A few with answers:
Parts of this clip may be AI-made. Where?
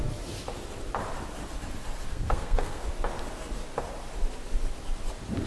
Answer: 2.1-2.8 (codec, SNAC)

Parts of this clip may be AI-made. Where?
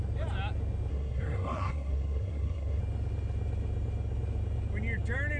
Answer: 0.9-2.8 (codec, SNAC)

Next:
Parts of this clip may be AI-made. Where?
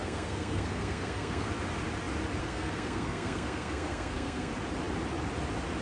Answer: 0.0-1.5 (codec, SNAC); 2.4-4.5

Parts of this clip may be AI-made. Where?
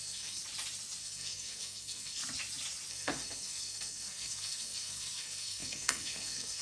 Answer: 0.0-0.4 (codec, SNAC); 1.0-2.2; 2.9-6.6